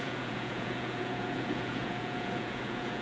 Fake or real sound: fake